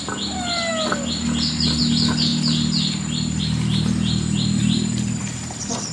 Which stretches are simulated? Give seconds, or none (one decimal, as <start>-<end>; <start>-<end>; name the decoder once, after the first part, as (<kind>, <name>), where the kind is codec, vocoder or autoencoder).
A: 4.6-5.2 (vocoder, BigVGAN v2)